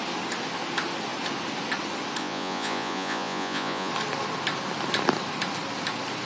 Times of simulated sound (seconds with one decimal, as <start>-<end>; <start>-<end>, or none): 2.2-3.9